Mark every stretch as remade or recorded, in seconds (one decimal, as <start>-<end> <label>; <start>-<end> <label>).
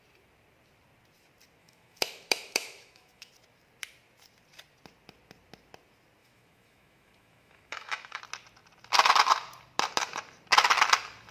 0.0-1.6 recorded; 1.6-3.3 remade; 3.3-6.2 recorded; 6.2-8.2 remade; 8.2-11.3 recorded